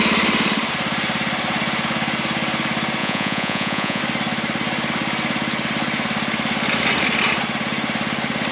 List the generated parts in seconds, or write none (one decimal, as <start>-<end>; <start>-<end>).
3.0-4.0